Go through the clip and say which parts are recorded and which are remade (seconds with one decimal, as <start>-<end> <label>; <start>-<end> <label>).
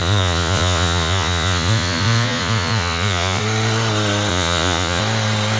0.0-3.4 remade; 3.4-4.3 recorded; 4.3-5.0 remade; 5.0-5.6 recorded